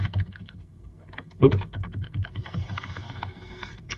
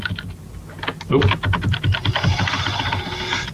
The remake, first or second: first